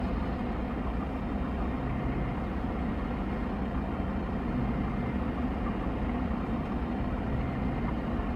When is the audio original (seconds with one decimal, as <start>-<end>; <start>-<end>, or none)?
0.0-8.4